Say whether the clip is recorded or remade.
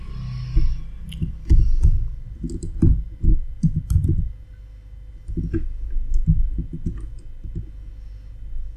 recorded